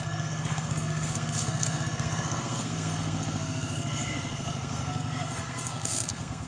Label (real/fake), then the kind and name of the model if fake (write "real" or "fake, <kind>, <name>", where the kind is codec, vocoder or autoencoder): fake, codec, SNAC